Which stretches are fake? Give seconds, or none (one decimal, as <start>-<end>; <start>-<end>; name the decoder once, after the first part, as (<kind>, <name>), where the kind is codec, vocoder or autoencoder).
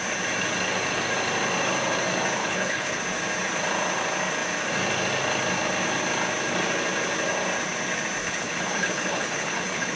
2.4-3.0 (codec, HILCodec); 8.2-10.0